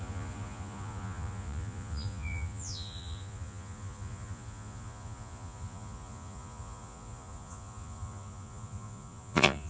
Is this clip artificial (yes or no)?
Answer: yes